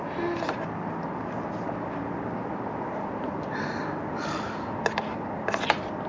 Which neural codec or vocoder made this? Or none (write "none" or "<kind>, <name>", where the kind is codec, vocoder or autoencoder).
none